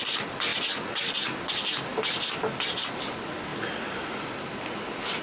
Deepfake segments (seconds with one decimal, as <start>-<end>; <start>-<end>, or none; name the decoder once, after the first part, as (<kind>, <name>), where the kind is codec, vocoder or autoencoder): 3.5-4.5 (vocoder, BigVGAN v2)